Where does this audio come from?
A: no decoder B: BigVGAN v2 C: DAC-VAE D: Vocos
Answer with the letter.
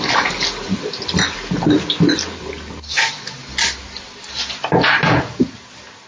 A